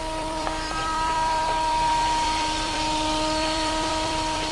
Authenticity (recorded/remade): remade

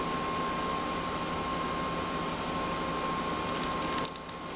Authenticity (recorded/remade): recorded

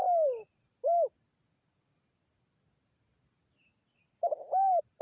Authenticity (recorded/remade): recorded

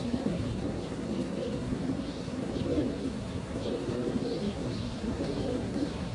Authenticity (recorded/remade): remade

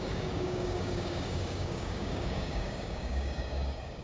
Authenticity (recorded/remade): remade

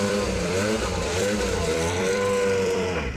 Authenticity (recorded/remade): remade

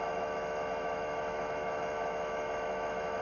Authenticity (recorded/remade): remade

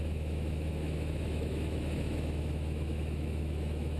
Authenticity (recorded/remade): remade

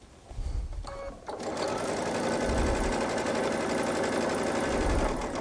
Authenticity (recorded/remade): recorded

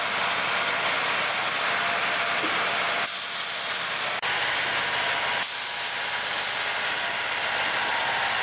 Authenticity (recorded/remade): recorded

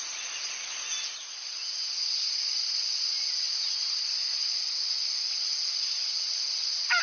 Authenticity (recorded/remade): recorded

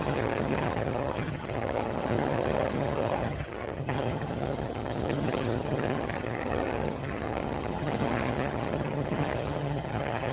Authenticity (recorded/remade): remade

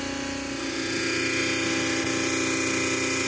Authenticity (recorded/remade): recorded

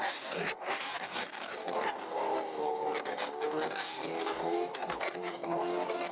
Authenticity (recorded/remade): remade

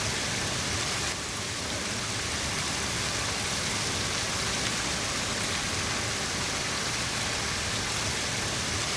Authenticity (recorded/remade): recorded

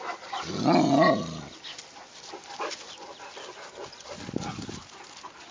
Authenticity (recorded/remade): recorded